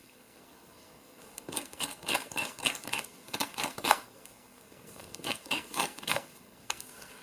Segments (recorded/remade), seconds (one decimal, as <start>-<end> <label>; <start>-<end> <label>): 0.0-7.2 remade